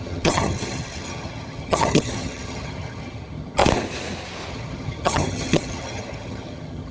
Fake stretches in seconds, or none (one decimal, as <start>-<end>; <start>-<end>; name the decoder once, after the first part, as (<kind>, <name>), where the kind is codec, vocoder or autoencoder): 0.0-3.6 (vocoder, HiFi-GAN); 4.5-6.9